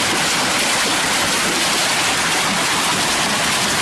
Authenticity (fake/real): real